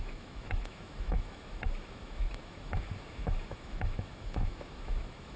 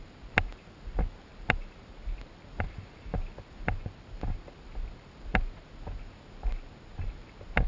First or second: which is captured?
second